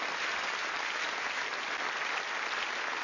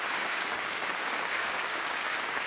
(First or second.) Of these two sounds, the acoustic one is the first